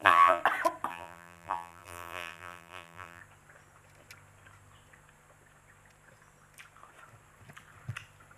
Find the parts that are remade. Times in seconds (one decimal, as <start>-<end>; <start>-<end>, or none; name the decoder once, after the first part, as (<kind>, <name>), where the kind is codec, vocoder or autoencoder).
0.0-0.4 (vocoder, BigVGAN v2); 0.9-3.2